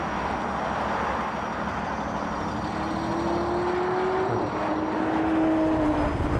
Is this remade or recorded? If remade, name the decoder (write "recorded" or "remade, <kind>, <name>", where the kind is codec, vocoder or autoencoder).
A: recorded